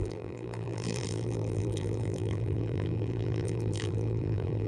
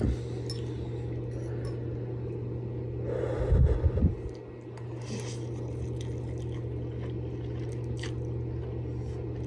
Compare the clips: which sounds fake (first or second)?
first